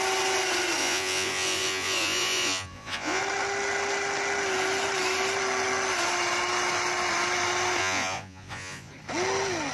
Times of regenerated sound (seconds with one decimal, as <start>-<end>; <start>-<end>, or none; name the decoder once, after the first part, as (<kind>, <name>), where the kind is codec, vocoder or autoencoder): 0.8-3.2 (vocoder, Vocos); 7.8-8.9